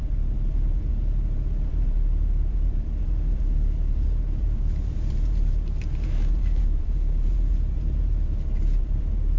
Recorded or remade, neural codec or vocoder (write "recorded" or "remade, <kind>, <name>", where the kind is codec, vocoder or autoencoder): remade, vocoder, BigVGAN v2